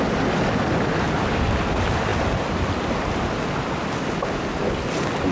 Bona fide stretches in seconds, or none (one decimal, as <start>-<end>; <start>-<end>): 0.0-5.3